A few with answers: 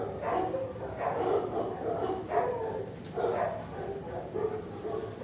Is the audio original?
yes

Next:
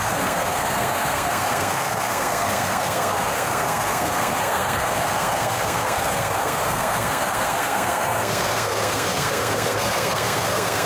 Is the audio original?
no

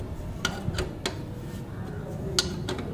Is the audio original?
yes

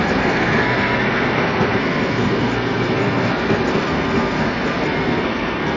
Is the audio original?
no